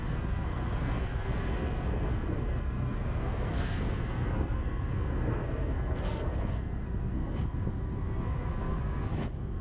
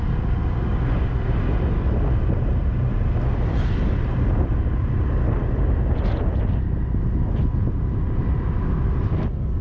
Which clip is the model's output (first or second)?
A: first